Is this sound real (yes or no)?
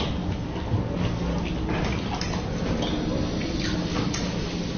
yes